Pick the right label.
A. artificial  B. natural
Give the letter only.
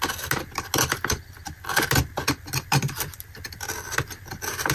B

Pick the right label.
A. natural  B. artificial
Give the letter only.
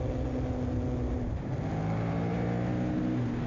A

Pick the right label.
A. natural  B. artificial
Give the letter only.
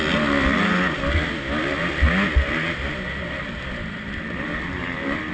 A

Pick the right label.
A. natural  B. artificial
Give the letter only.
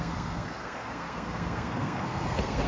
B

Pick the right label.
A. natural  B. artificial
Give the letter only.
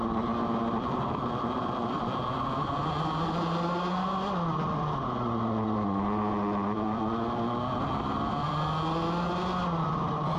A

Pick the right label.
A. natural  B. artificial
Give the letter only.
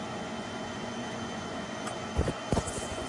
B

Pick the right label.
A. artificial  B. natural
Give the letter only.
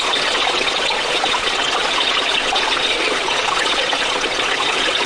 A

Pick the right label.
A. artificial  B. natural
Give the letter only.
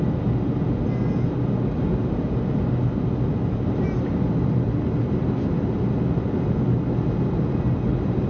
B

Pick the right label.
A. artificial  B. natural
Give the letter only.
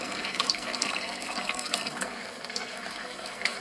A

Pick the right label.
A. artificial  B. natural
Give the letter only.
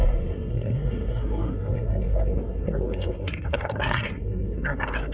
A